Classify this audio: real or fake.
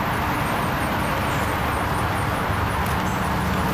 real